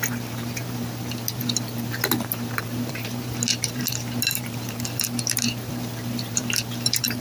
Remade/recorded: remade